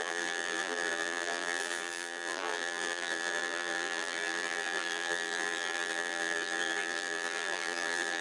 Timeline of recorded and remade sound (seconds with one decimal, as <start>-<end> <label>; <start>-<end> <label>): 0.0-8.2 remade